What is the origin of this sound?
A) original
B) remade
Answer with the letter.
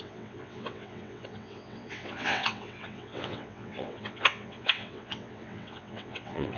B